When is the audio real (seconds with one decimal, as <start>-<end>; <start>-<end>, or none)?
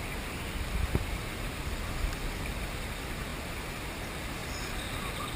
0.0-5.4